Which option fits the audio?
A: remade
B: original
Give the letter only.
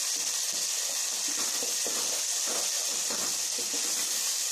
B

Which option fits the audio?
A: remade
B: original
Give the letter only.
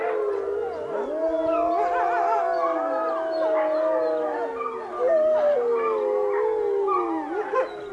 B